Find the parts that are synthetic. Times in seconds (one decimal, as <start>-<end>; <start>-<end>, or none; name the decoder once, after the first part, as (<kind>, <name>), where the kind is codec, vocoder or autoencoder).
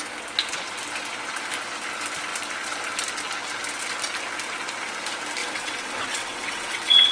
5.4-7.1 (vocoder, WaveNeXt)